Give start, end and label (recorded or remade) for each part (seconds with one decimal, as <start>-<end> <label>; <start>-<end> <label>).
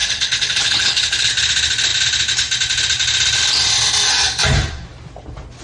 0.0-1.3 remade; 1.3-5.6 recorded